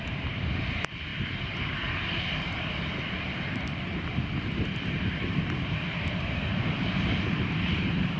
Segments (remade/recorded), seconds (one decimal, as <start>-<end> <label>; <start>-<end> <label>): 0.0-1.1 remade; 1.1-1.9 recorded; 1.9-8.2 remade